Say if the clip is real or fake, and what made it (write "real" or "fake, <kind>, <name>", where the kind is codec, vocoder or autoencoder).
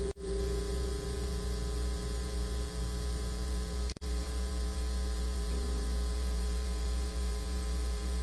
fake, vocoder, BigVGAN v2